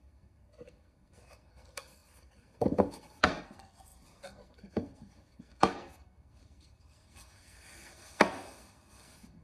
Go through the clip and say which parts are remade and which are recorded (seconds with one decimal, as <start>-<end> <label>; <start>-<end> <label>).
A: 0.0-9.4 remade